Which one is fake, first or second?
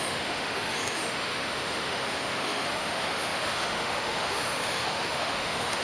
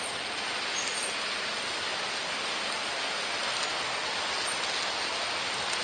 first